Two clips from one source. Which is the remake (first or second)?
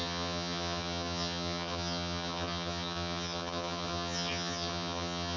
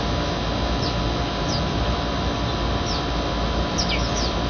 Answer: first